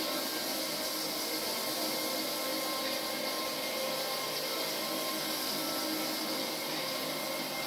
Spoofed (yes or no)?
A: no